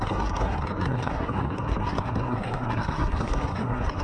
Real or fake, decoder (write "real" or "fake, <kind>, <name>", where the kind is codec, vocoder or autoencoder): fake, codec, SNAC